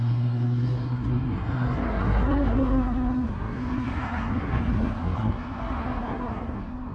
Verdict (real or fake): fake